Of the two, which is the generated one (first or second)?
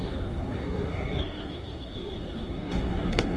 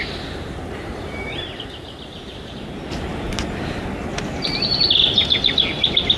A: first